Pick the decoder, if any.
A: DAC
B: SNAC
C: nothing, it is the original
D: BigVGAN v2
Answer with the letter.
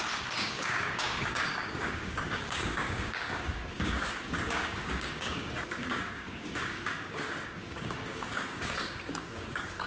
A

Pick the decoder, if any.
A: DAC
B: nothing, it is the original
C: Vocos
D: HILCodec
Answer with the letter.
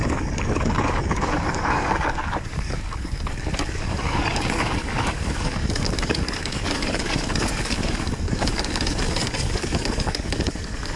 A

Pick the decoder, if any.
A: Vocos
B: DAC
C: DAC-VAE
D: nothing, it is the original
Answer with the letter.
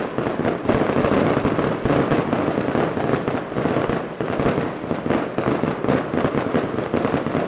D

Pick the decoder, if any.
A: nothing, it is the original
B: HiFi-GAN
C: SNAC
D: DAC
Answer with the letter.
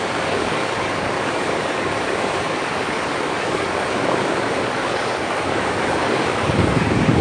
D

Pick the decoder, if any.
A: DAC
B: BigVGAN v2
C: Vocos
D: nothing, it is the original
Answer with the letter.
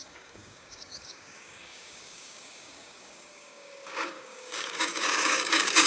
A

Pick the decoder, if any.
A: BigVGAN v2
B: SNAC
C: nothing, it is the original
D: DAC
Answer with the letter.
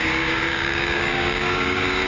D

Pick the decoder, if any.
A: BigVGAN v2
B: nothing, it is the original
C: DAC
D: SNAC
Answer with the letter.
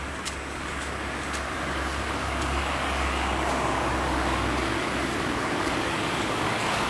C